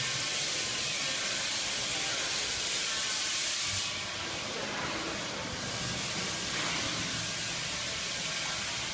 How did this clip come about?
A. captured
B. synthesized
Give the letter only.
A